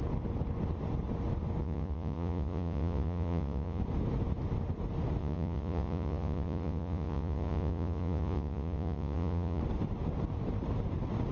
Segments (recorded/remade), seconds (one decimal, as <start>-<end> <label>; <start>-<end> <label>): 0.0-1.6 recorded; 1.6-3.8 remade; 3.8-5.2 recorded; 5.2-9.6 remade; 9.6-11.3 recorded